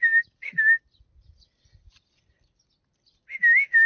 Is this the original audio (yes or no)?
yes